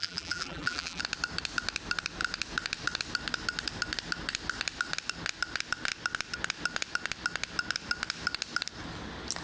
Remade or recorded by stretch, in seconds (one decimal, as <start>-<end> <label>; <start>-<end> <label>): 0.0-1.0 remade; 1.0-9.4 recorded